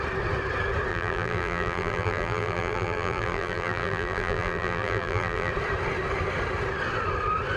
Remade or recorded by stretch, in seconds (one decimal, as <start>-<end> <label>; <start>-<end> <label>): 0.0-0.9 recorded; 0.9-5.5 remade; 5.5-7.6 recorded

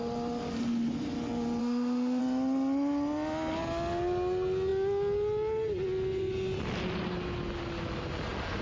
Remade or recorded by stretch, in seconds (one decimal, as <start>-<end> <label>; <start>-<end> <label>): 0.0-1.6 recorded; 1.6-2.2 remade; 2.2-8.6 recorded